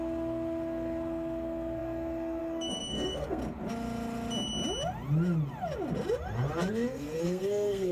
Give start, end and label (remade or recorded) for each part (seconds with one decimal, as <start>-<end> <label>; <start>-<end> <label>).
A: 0.0-3.4 remade; 3.4-6.7 recorded; 6.7-7.9 remade